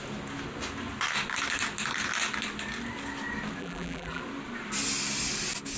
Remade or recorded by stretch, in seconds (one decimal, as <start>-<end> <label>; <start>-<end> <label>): 0.0-3.6 recorded; 3.6-4.2 remade; 4.2-5.8 recorded